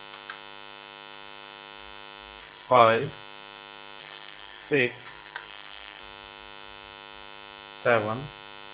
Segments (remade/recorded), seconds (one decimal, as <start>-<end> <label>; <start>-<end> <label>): 0.0-2.4 recorded; 2.4-3.1 remade; 3.1-4.0 recorded; 4.0-6.0 remade; 6.0-8.7 recorded